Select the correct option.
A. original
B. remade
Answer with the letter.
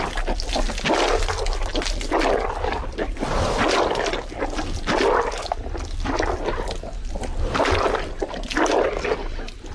A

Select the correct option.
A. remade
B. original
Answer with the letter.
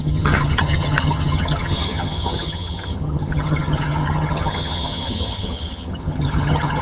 A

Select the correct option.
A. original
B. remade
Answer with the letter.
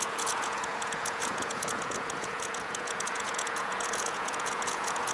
B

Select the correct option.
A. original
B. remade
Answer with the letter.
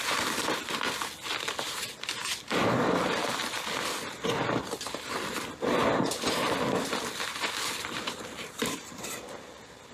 A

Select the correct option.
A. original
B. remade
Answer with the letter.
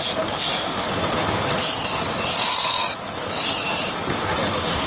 A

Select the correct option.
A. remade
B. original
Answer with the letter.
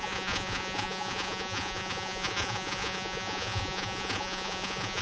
A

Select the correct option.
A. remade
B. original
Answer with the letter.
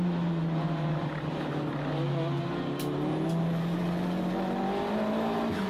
B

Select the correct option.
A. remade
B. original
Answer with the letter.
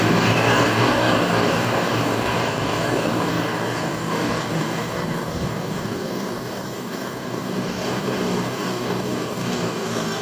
A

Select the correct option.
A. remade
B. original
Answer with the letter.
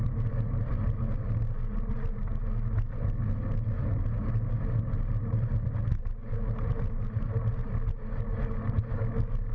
B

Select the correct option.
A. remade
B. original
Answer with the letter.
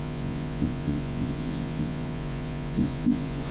A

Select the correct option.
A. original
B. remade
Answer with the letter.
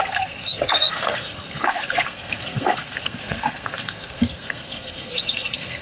B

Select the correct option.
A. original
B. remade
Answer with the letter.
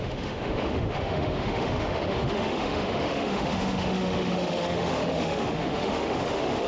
B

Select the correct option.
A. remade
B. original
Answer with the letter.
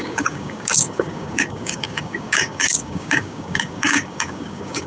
A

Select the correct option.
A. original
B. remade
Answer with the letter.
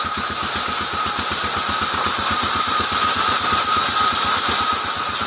A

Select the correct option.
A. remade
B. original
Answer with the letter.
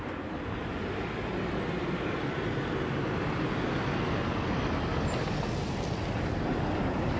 B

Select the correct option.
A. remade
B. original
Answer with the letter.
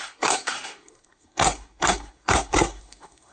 A